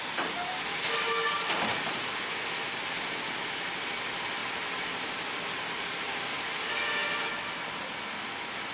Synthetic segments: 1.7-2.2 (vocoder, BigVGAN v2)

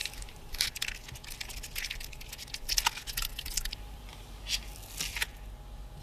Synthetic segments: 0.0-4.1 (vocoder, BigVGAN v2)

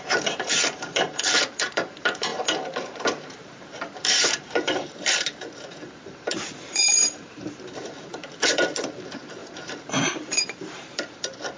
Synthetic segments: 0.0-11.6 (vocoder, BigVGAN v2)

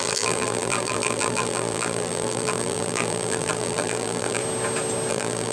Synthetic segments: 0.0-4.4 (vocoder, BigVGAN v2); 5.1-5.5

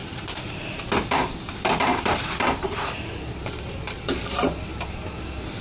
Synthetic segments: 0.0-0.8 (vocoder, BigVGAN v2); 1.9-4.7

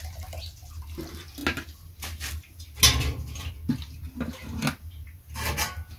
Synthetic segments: none

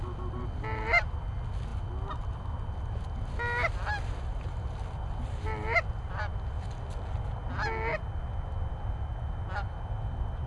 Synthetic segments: none